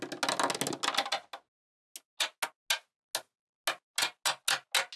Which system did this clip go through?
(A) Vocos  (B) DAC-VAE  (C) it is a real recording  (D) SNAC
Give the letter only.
C